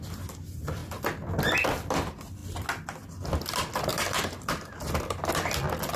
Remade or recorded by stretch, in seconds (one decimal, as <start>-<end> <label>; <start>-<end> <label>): 0.0-3.9 recorded; 3.9-5.3 remade; 5.3-6.0 recorded